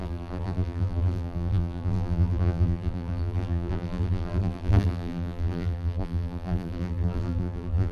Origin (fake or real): fake